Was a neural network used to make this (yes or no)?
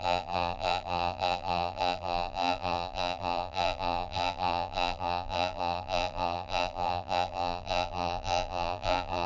yes